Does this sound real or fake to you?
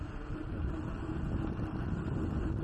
real